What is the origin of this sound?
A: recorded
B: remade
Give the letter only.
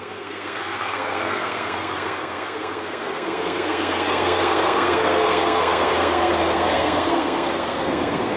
B